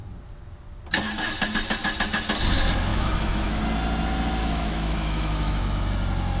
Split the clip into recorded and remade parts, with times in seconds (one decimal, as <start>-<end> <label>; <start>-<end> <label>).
0.0-2.9 recorded; 2.9-3.6 remade; 3.6-4.4 recorded; 4.4-5.6 remade; 5.6-6.4 recorded